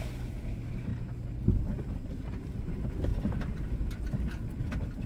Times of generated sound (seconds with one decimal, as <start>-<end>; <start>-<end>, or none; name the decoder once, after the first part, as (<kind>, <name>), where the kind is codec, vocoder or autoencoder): 0.0-0.9 (vocoder, BigVGAN v2); 1.8-3.1